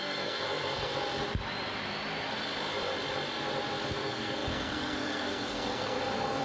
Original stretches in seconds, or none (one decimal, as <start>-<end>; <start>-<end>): 0.9-3.9